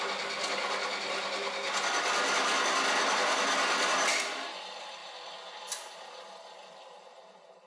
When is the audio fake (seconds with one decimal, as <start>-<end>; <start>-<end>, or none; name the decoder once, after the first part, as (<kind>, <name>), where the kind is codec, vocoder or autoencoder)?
none